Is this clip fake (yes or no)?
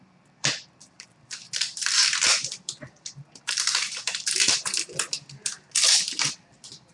yes